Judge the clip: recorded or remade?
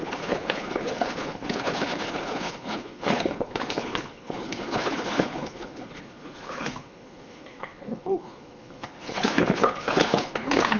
remade